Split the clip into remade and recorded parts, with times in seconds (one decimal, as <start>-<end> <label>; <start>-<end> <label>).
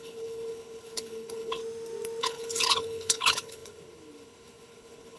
0.0-1.6 remade; 1.6-2.2 recorded; 2.2-5.2 remade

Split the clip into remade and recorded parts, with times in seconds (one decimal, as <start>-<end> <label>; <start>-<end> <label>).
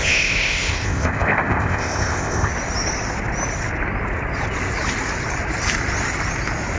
0.0-2.5 remade; 2.5-6.8 recorded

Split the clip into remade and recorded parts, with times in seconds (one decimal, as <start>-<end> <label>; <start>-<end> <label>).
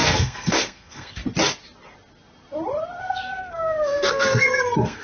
0.0-1.2 remade; 1.2-3.0 recorded; 3.0-5.0 remade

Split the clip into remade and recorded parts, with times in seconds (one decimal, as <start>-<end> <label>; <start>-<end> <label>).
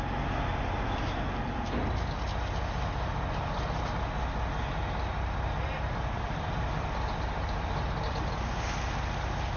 0.0-3.1 recorded; 3.1-3.6 remade; 3.6-5.1 recorded; 5.1-8.4 remade; 8.4-9.6 recorded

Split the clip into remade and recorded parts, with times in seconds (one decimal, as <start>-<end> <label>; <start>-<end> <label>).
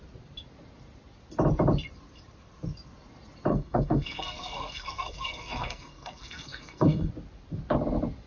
0.0-3.5 recorded; 3.5-7.1 remade; 7.1-8.3 recorded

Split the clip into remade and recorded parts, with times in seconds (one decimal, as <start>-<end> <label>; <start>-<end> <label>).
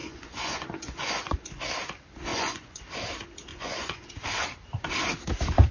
0.0-1.6 remade; 1.6-2.3 recorded; 2.3-2.8 remade; 2.8-3.5 recorded; 3.5-4.1 remade; 4.1-5.7 recorded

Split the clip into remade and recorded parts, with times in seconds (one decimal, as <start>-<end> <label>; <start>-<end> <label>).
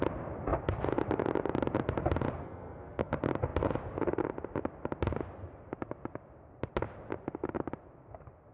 0.0-2.4 recorded; 2.4-3.1 remade; 3.1-8.5 recorded